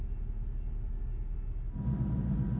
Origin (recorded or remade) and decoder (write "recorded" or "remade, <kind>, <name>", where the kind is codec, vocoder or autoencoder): recorded